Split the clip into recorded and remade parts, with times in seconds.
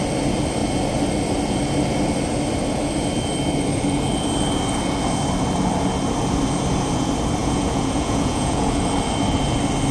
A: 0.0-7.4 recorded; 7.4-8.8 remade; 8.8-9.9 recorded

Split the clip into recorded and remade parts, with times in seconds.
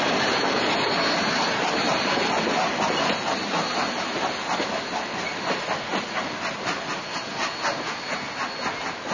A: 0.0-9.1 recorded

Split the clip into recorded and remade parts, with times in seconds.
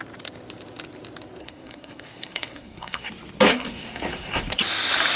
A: 0.0-1.4 recorded; 1.4-3.1 remade; 3.1-3.5 recorded; 3.5-4.6 remade; 4.6-5.2 recorded